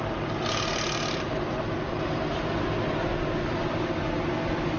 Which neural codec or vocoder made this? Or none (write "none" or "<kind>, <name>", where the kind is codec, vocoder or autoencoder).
none